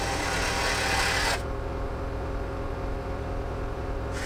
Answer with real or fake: real